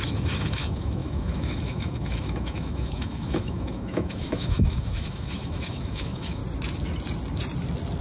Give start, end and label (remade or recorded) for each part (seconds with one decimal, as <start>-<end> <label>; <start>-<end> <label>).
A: 0.0-6.4 remade; 6.4-8.0 recorded